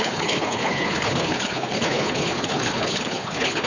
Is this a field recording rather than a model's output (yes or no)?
no